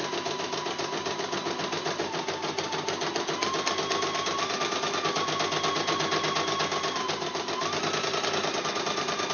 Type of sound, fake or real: real